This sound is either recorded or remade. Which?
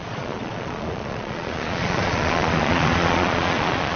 remade